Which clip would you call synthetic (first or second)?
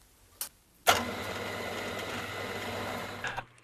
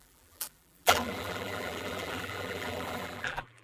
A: second